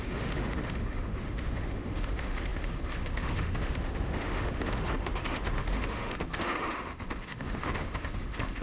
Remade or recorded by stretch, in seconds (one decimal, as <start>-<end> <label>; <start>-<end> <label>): 0.0-8.6 remade